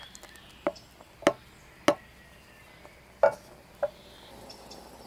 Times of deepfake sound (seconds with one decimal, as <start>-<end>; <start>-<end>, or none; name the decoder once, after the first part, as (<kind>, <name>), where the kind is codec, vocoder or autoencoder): none